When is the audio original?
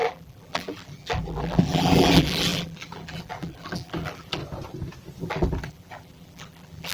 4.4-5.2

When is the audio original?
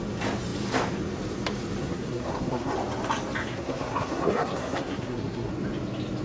0.0-1.8; 2.7-3.4; 5.5-6.2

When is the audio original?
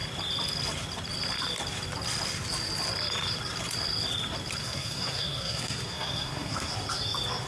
0.0-4.6; 6.7-7.5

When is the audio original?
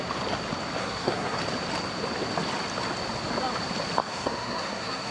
0.0-0.8; 1.4-4.0